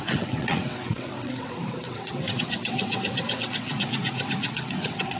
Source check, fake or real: fake